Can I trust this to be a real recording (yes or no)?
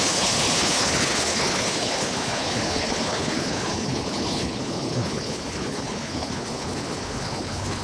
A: no